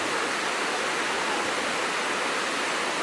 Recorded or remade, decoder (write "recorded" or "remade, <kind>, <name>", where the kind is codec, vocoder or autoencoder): recorded